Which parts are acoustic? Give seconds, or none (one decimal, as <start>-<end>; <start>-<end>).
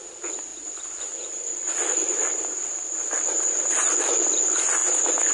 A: 0.0-5.3